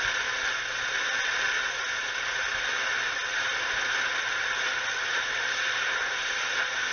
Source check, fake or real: real